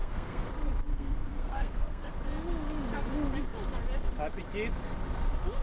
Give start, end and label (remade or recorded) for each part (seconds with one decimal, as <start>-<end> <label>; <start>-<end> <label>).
0.0-0.5 remade; 0.5-0.9 recorded; 0.9-2.1 remade; 2.1-5.6 recorded